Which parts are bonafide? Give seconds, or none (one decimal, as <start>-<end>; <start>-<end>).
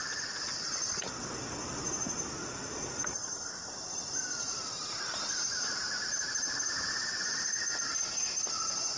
0.0-0.5; 1.1-2.7; 7.5-9.0